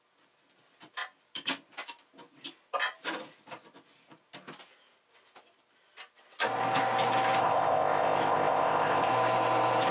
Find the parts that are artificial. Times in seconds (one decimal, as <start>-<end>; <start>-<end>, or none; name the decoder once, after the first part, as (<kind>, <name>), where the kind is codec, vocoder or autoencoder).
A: 7.4-9.1 (codec, ZipCodec)